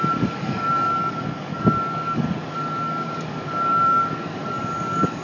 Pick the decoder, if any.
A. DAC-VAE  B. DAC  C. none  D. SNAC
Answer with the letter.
B